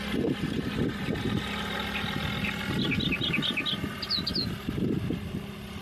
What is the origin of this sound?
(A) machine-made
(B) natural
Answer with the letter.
B